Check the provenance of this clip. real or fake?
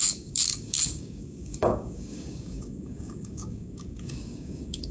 fake